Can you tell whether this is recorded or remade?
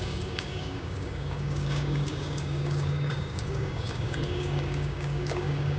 remade